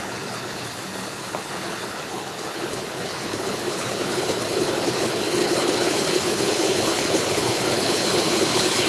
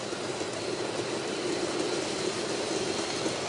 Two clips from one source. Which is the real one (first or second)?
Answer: second